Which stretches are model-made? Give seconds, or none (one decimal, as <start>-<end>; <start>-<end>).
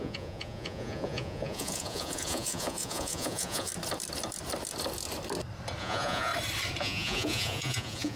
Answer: 0.0-3.7; 5.8-6.3; 6.8-8.2